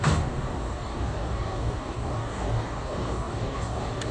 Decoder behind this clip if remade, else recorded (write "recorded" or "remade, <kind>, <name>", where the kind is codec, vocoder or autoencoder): remade, codec, DAC